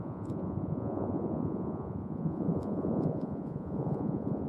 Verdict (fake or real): fake